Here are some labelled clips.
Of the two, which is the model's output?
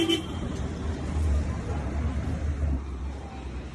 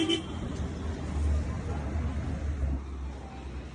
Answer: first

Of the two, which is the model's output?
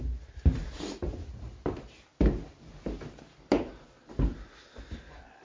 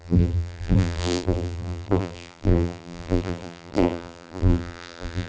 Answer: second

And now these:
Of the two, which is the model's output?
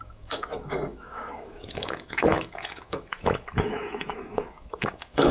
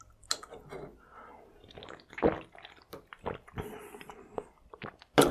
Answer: first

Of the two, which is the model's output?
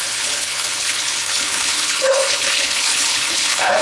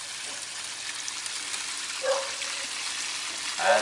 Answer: first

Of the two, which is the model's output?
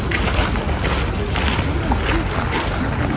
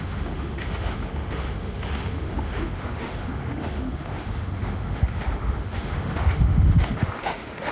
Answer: second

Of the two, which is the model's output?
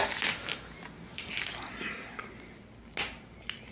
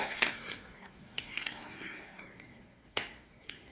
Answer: second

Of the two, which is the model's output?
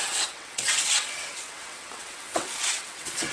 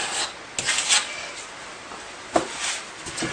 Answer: first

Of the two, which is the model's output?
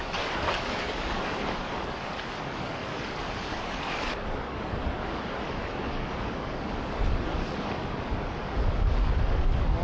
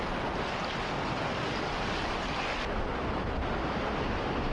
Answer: first